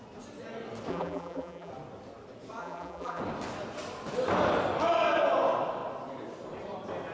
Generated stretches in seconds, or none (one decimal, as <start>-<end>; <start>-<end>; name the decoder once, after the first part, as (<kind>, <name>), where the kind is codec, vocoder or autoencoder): 0.9-1.7 (vocoder, BigVGAN v2); 2.6-3.2